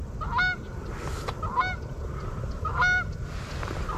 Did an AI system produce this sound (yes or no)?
no